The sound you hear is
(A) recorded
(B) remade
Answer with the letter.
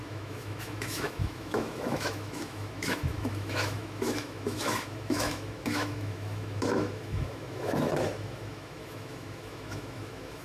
B